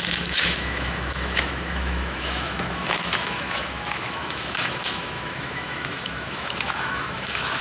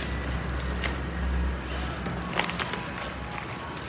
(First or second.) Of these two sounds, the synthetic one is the first